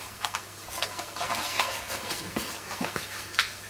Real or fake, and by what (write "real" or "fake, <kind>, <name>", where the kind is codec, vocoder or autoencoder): fake, codec, SNAC